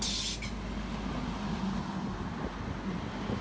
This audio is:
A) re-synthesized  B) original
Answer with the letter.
B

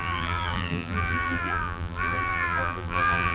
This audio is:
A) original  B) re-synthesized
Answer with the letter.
B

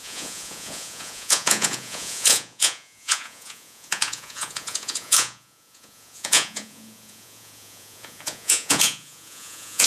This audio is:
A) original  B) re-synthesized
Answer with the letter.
B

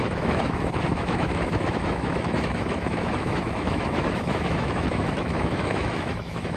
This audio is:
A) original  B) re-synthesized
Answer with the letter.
B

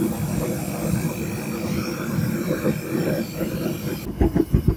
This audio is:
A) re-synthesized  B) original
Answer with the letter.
B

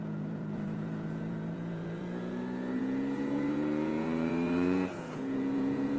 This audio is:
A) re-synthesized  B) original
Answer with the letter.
A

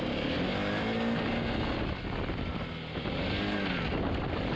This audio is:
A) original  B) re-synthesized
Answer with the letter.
A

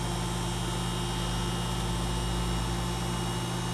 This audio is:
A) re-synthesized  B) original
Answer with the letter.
B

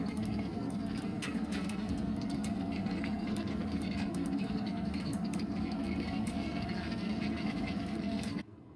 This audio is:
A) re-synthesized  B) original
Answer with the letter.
A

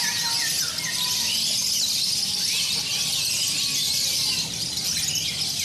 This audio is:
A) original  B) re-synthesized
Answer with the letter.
A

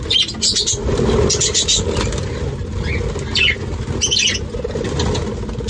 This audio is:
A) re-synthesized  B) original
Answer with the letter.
B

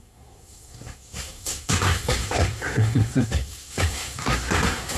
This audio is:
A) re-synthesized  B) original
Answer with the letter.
A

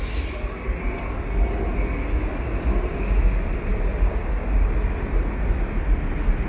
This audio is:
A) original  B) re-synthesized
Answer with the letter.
A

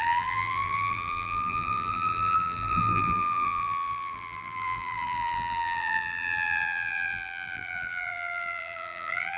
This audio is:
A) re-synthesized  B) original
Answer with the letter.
A